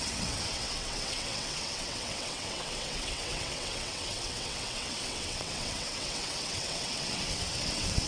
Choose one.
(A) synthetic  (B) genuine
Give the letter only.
A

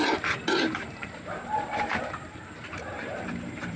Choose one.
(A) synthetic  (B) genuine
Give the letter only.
A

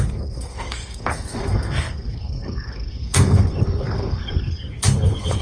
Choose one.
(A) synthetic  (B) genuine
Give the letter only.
A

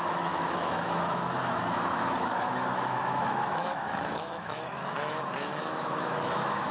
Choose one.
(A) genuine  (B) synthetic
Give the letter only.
B